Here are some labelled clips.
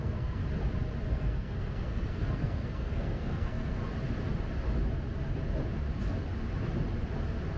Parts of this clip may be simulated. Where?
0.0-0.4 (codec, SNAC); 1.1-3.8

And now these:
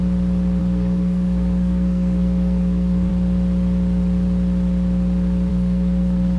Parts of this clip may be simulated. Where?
0.6-3.1 (codec, SNAC); 5.5-6.4

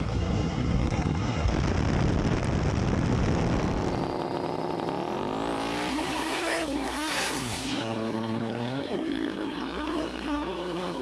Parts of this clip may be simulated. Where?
0.0-1.5 (codec, SNAC); 5.9-11.0